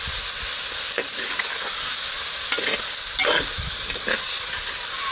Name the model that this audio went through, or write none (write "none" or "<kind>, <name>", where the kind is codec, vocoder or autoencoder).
none